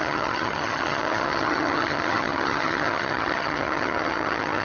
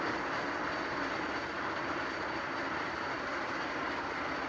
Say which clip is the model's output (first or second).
first